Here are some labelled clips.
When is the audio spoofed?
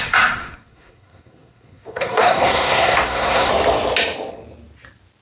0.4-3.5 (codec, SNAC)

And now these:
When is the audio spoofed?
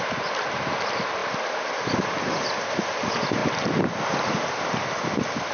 none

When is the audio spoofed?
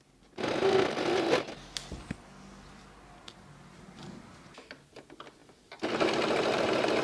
none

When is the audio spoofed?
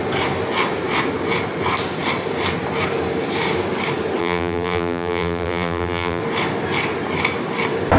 4.2-6.2 (vocoder, BigVGAN v2)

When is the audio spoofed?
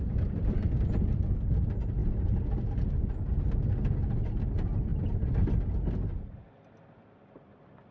none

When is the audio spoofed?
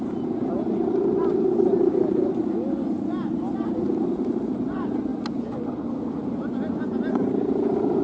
none